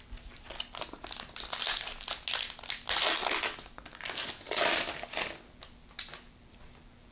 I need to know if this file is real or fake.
real